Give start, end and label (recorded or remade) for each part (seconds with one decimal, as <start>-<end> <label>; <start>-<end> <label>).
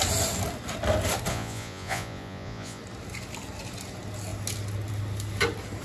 0.0-1.3 recorded; 1.3-2.8 remade; 2.8-5.8 recorded